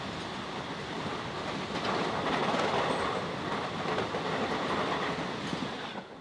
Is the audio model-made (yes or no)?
no